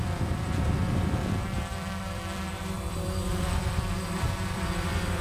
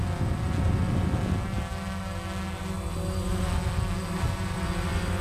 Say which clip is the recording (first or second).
second